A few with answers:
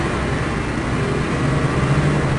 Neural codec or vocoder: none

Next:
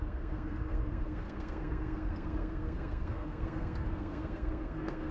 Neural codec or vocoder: codec, SNAC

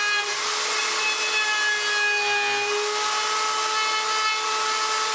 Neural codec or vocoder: none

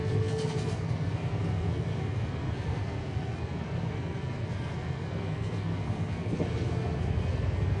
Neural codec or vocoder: codec, SNAC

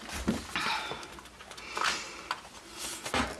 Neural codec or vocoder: none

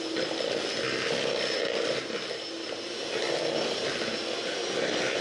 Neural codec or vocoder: none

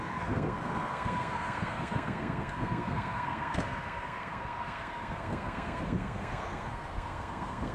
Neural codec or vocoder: codec, SNAC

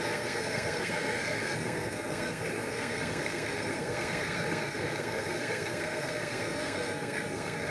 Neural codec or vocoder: codec, SNAC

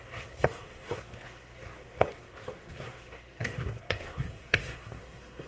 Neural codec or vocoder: codec, SNAC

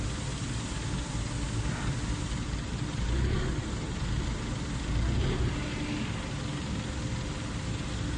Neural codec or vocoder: none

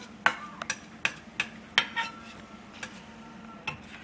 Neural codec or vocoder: none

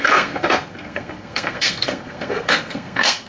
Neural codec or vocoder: codec, SNAC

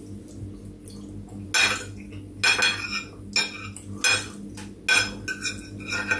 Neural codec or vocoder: none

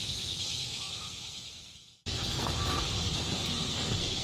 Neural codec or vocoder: codec, SNAC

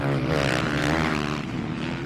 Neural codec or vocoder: none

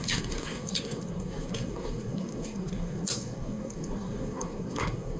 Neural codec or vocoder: codec, SNAC